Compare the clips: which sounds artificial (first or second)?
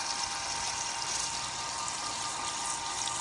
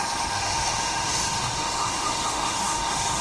second